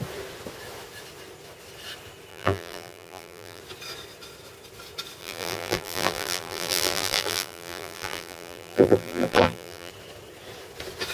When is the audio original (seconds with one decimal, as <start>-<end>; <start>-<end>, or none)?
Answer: 0.0-2.3; 3.6-5.2; 9.9-11.1